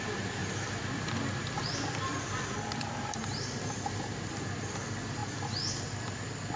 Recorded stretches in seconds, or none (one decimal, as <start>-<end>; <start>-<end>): 0.0-6.6